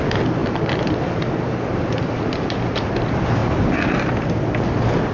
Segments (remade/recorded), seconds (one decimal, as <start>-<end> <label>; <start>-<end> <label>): 0.0-0.4 recorded; 0.4-3.0 remade; 3.0-3.4 recorded; 3.4-4.1 remade; 4.1-5.1 recorded